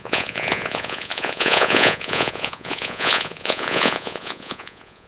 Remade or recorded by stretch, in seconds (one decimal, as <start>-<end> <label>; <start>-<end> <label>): 0.0-5.1 remade